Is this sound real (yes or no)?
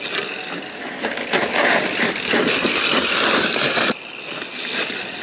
yes